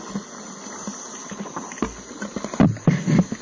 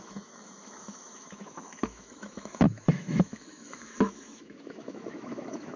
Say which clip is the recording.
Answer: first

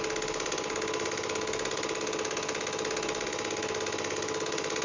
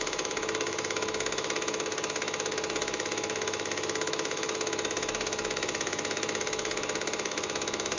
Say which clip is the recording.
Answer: first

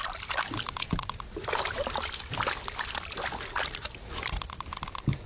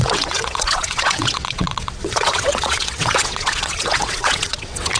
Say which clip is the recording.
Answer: first